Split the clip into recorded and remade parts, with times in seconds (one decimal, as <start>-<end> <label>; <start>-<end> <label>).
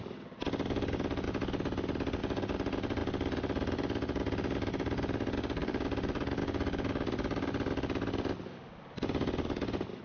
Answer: 0.0-5.6 recorded; 5.6-6.2 remade; 6.2-10.0 recorded